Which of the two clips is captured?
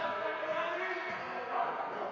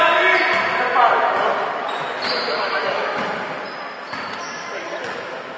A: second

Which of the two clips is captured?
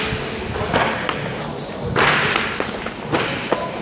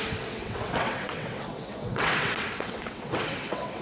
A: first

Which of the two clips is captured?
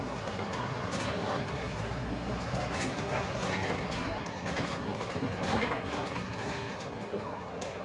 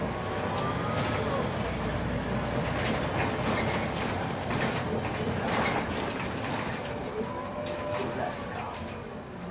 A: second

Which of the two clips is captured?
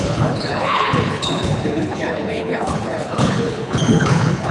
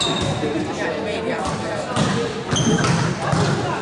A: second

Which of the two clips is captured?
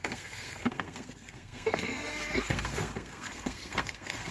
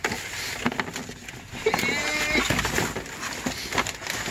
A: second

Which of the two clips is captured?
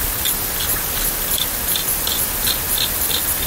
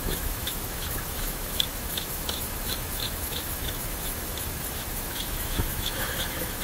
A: first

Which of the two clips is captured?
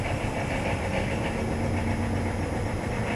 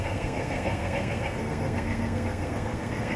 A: first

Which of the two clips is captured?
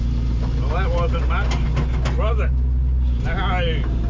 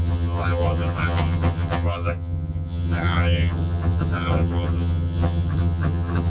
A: first